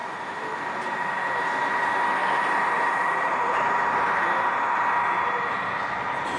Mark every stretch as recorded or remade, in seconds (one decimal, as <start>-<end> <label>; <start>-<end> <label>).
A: 0.0-2.2 recorded; 2.2-4.2 remade; 4.2-6.4 recorded